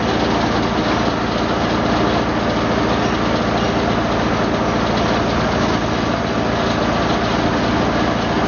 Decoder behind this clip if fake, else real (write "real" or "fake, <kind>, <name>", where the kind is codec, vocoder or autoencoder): real